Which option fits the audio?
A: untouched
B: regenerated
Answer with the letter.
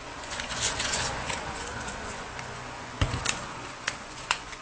B